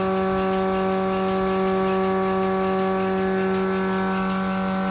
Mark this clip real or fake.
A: real